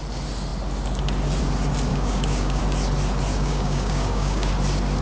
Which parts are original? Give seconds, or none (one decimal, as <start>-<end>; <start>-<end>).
0.0-1.9; 2.6-3.3; 4.5-5.0